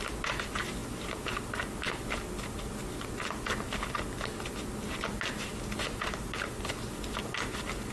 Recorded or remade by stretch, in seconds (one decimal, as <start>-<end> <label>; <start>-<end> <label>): 0.0-7.9 recorded